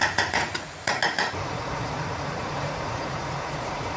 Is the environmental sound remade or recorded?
remade